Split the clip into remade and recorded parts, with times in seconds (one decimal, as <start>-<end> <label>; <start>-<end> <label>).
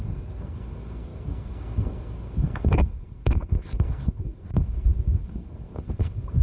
0.0-6.4 remade